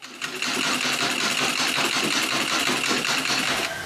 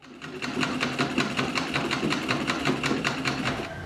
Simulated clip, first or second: second